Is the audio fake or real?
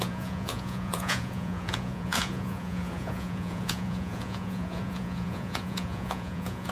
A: fake